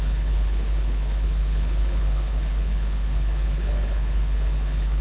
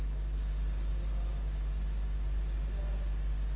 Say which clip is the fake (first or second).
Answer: first